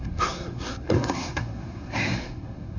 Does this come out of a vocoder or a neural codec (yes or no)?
yes